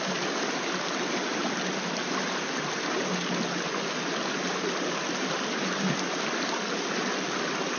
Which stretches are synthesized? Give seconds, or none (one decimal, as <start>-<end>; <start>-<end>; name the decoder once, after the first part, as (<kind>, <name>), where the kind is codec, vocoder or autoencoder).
none